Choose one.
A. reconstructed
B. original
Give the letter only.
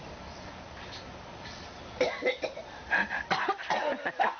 B